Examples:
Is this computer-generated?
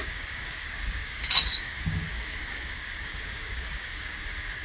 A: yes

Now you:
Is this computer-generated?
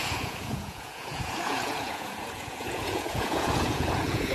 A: yes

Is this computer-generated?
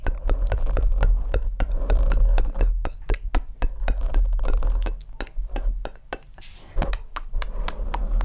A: no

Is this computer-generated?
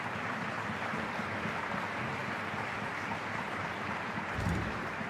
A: yes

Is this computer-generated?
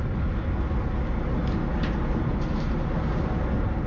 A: no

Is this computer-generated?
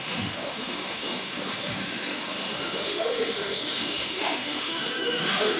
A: yes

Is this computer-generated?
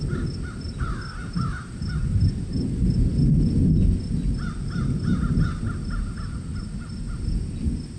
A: no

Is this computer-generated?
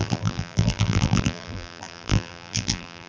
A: yes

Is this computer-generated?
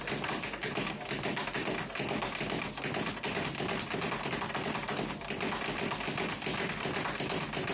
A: no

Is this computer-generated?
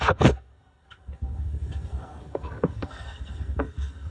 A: yes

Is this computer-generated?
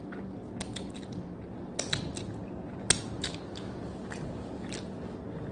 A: no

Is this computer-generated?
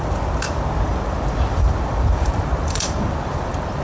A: yes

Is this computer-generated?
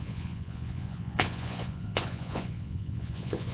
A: yes